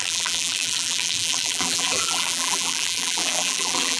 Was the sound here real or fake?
fake